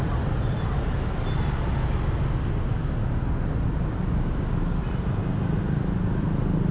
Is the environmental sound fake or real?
real